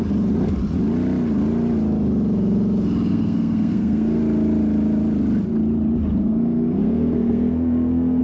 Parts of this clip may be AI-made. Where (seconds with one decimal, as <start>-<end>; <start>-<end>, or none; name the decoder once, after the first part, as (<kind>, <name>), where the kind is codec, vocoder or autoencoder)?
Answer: 3.1-4.2 (codec, SNAC); 6.2-8.2